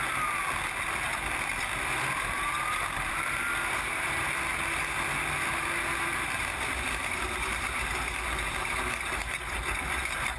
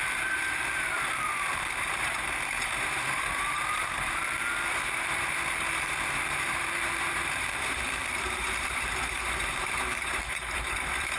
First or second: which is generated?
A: second